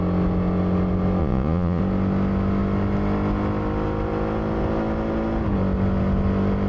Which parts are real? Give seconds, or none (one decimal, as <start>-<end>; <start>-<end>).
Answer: 0.0-1.2; 1.8-6.7